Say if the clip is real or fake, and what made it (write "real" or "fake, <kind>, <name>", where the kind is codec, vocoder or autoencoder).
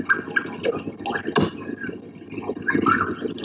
real